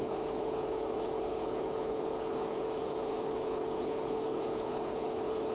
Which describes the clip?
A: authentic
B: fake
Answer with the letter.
B